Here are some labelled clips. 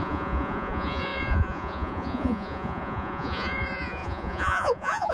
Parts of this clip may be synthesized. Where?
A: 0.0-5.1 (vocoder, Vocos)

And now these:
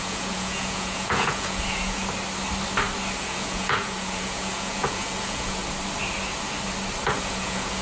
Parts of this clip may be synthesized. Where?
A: 0.0-2.0 (vocoder, Vocos); 3.2-5.6; 7.2-7.8

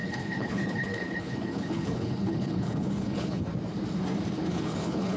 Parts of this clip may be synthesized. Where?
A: 0.0-3.5 (codec, HILCodec); 4.5-5.2

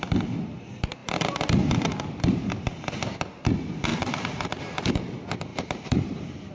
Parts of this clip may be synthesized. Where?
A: 3.9-4.9 (vocoder, BigVGAN v2); 5.5-6.5

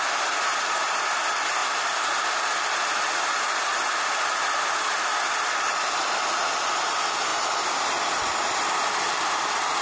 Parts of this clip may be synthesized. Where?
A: none

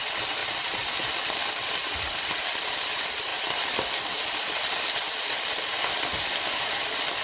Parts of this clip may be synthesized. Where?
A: 0.0-0.4 (vocoder, BigVGAN v2); 1.4-7.2

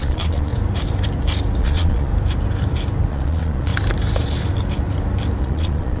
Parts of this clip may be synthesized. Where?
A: 0.0-0.5 (vocoder, Vocos); 1.6-2.1; 3.1-3.7; 5.4-6.0